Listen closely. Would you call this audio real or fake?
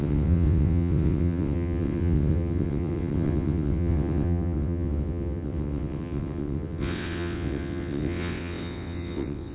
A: fake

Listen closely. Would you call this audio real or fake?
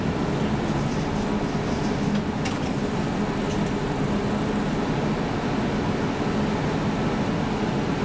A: real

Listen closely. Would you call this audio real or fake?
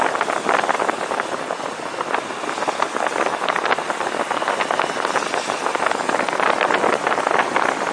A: real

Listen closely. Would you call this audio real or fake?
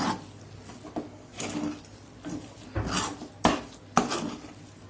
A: real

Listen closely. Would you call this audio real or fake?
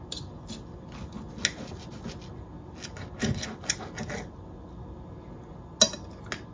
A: real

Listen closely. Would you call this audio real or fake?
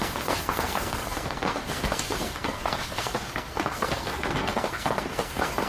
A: fake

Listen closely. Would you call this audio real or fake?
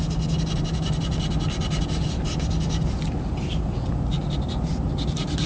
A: real